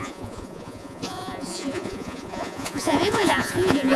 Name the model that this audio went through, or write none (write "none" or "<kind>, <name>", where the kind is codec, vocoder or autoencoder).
vocoder, Vocos